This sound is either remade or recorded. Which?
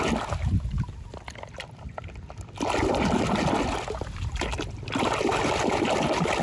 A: recorded